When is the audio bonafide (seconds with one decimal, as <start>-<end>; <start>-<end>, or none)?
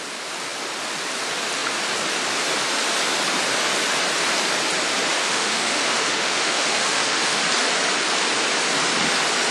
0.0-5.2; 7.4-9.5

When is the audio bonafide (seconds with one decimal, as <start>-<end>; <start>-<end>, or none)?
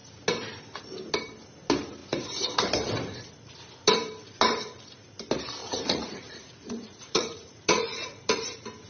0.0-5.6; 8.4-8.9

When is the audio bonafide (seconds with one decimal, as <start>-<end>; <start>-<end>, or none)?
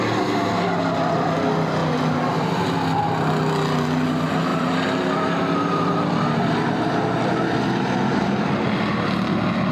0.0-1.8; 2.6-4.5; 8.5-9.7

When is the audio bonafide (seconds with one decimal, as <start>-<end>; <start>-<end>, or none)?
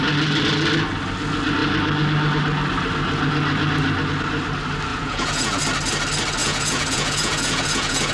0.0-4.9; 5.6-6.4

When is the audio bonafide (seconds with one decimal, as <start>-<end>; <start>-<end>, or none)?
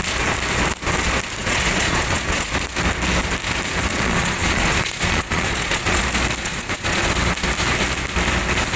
0.0-1.4; 2.5-3.9; 6.0-6.4; 7.1-8.8